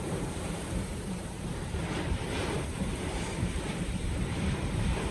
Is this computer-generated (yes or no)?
yes